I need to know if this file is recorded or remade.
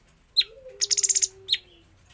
recorded